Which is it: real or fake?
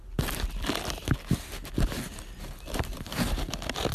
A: real